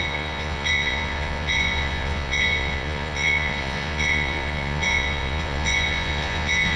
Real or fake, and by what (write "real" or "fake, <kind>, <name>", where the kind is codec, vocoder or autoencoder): fake, vocoder, Vocos